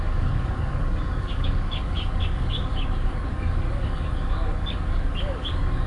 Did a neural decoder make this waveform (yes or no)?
yes